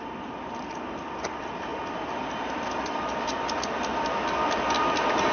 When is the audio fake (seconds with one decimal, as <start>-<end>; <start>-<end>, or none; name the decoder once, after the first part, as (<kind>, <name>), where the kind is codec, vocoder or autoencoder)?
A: none

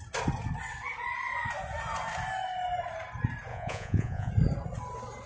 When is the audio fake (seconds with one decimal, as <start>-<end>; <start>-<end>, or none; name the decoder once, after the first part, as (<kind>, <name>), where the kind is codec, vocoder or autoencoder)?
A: 3.5-4.3 (vocoder, Vocos)

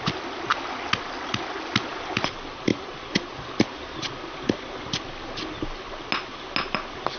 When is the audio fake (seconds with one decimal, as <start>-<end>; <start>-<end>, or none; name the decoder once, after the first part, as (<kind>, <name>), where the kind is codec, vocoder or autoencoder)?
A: none

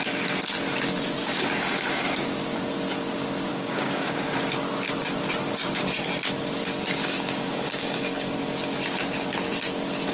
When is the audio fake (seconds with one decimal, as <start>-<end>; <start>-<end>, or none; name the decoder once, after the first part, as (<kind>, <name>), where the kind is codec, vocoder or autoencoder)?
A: 1.2-2.1 (codec, DAC); 3.5-4.1; 7.0-8.3

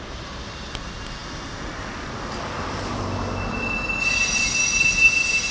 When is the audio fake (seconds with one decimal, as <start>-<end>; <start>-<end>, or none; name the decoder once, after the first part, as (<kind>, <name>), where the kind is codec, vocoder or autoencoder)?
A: none